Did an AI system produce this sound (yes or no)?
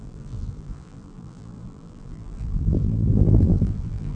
yes